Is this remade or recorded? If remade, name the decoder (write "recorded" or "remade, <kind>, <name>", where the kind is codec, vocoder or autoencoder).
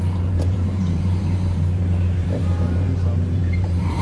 remade, vocoder, BigVGAN v2